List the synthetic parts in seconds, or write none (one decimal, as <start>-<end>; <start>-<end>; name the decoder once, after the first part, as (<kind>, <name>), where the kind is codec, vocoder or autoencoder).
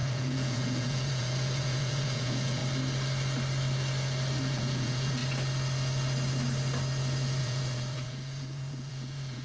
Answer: 0.0-2.6 (vocoder, Vocos); 4.4-5.2; 7.4-9.4